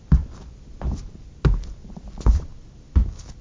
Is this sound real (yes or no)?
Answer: yes